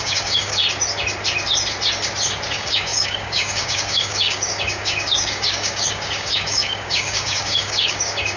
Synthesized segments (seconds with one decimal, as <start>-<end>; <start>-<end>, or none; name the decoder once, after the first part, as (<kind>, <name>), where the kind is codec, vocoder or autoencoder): 0.0-0.6 (codec, DAC); 2.5-8.4